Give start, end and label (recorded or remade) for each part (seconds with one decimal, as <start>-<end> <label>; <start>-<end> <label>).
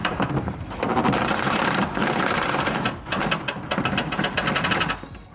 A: 0.0-3.2 remade; 3.2-5.3 recorded